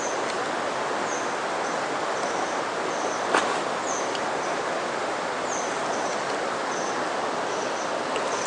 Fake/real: real